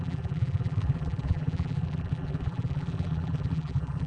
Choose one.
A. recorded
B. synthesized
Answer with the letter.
B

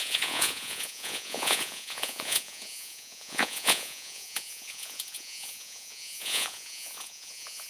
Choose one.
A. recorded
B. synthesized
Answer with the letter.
B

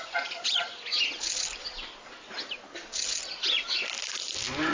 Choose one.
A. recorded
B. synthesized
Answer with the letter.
A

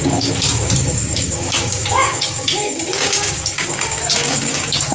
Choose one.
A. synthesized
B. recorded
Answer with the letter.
A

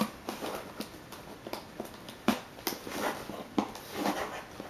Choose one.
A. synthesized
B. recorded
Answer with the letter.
B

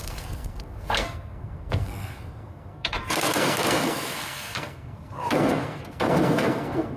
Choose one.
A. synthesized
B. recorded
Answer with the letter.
A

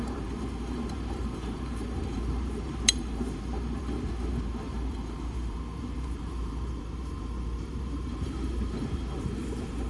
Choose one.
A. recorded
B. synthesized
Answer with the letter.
B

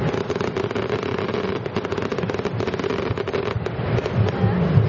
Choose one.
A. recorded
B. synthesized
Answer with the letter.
A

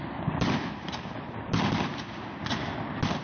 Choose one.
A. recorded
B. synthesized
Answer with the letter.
A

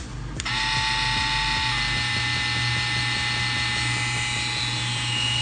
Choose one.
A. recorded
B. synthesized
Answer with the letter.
A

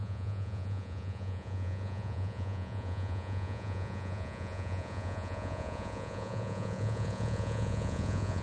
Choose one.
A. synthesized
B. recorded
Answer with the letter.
A